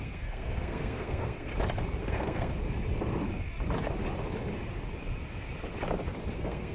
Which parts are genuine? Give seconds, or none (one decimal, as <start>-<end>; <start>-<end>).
1.5-2.1; 2.6-6.3

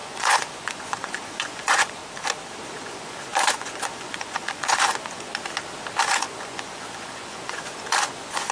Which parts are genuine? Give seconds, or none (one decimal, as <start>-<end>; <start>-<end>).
2.0-2.6; 5.3-6.1

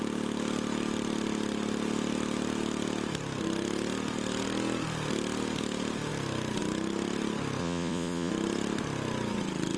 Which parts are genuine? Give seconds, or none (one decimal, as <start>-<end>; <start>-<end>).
0.0-7.6; 8.3-9.8

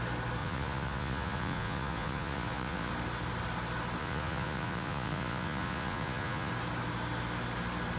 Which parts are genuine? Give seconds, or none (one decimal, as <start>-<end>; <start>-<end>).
0.0-0.4; 2.9-4.0; 6.5-8.0

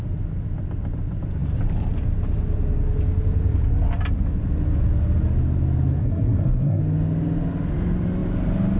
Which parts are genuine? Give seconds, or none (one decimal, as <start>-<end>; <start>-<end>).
0.0-6.0; 6.8-8.8